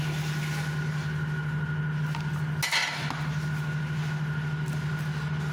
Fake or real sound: real